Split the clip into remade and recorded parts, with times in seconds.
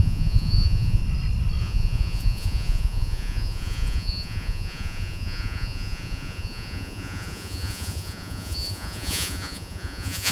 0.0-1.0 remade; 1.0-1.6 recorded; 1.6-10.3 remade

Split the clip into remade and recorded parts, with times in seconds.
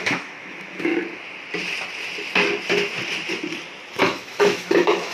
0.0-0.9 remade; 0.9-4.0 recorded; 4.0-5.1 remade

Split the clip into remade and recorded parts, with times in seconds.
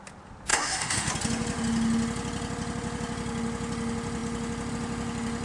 0.0-0.5 recorded; 0.5-1.1 remade; 1.1-5.4 recorded